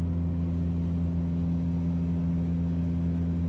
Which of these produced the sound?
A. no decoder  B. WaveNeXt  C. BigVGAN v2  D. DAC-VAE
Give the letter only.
A